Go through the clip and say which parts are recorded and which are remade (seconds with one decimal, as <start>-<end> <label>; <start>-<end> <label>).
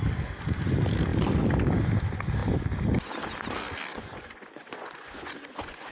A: 0.0-3.9 recorded; 3.9-5.9 remade